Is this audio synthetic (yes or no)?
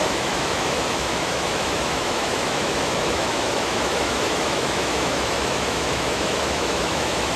yes